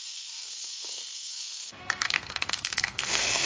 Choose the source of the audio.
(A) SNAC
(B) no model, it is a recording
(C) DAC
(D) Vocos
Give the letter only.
A